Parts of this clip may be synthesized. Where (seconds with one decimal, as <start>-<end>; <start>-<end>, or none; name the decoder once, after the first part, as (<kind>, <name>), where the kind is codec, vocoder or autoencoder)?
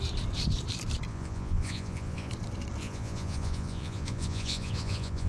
1.1-2.3 (vocoder, Vocos); 2.8-5.3